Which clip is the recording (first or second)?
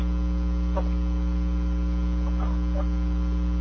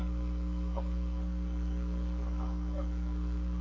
first